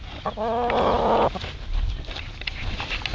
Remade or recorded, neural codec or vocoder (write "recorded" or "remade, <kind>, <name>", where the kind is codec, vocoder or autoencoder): recorded